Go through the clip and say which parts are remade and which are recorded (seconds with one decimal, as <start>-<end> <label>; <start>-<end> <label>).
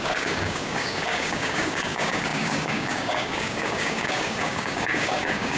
0.0-5.6 remade